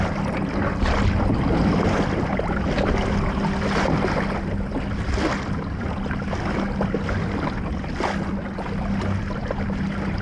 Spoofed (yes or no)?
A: no